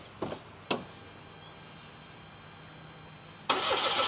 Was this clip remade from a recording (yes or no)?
no